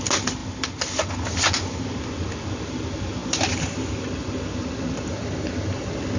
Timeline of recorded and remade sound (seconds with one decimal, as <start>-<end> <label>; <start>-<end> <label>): 0.0-6.2 recorded